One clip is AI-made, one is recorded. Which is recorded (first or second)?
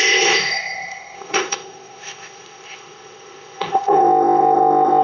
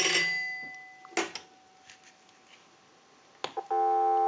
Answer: second